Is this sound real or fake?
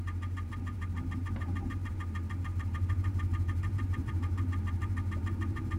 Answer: fake